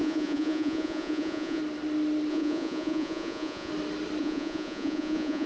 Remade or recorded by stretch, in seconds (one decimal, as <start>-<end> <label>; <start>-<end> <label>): 0.0-1.6 remade; 1.6-2.3 recorded; 2.3-3.7 remade; 3.7-4.2 recorded; 4.2-5.5 remade